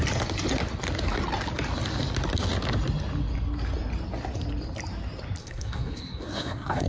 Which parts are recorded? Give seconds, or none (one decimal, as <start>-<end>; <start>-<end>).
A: 0.0-5.4